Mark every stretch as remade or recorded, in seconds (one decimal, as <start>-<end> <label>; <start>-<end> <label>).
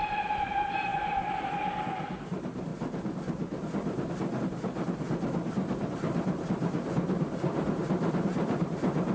0.0-0.9 remade; 0.9-2.1 recorded; 2.1-2.7 remade; 2.7-4.4 recorded; 4.4-9.1 remade